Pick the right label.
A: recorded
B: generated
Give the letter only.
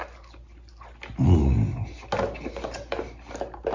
A